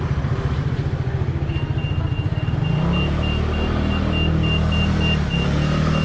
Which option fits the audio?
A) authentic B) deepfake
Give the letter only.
A